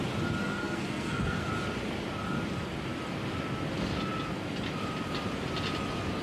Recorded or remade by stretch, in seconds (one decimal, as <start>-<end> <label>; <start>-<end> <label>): 0.0-0.4 recorded; 0.4-1.5 remade; 1.5-6.2 recorded